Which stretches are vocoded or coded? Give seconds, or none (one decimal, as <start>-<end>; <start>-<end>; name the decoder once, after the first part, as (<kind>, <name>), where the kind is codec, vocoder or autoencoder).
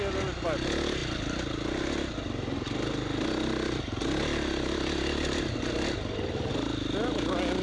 none